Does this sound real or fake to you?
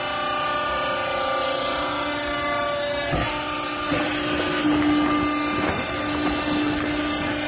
real